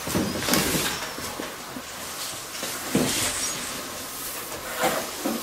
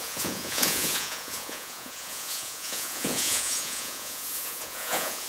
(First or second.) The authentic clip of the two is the first